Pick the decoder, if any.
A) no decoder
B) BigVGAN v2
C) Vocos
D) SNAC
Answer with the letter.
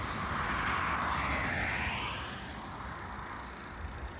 A